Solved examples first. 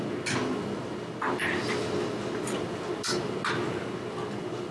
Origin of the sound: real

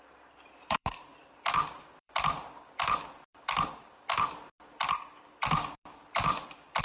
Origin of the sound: fake